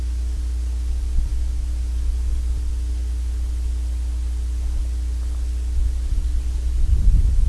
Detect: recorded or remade recorded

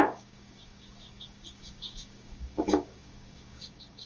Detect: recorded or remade remade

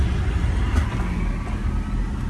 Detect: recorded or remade recorded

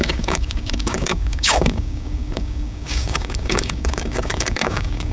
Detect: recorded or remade remade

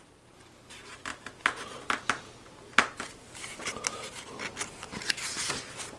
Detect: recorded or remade recorded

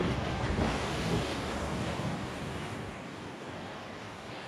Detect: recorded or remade remade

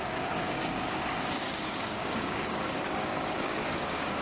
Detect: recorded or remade remade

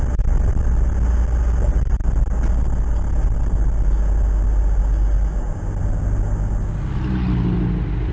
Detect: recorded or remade recorded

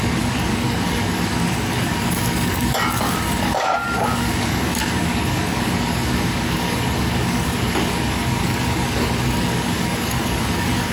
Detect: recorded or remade remade